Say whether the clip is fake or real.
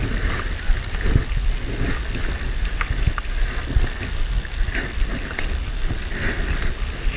real